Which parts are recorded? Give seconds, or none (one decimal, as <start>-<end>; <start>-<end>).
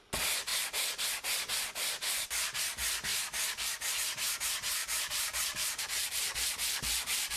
0.0-3.1; 3.7-4.8